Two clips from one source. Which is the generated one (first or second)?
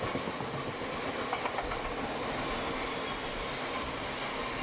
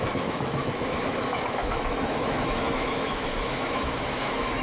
second